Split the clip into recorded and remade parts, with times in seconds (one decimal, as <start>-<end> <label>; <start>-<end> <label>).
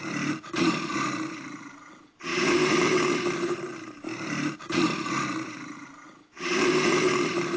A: 0.0-7.6 remade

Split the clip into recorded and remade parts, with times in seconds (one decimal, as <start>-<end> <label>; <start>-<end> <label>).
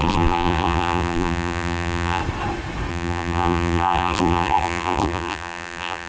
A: 0.0-2.2 remade; 2.2-2.9 recorded; 2.9-6.1 remade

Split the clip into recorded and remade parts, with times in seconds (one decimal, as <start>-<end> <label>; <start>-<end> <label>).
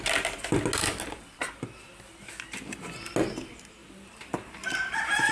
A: 0.0-3.8 recorded; 3.8-5.3 remade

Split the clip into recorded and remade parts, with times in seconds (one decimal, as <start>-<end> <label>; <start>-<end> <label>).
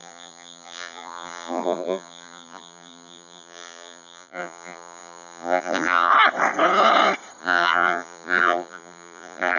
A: 0.0-6.1 remade; 6.1-7.4 recorded; 7.4-9.6 remade